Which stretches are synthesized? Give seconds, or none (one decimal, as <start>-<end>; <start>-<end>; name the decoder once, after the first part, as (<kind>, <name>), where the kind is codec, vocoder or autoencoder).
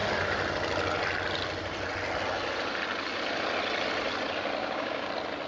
4.6-5.1 (codec, DAC)